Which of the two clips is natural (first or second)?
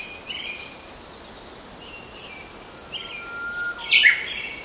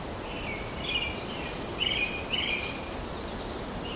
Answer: first